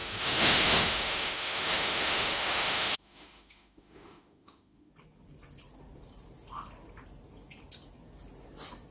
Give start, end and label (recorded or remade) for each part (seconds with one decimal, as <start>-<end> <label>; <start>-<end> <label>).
0.0-4.9 remade; 4.9-8.9 recorded